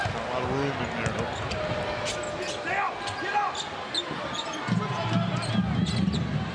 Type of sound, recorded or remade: recorded